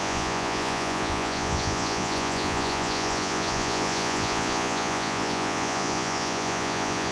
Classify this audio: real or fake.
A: fake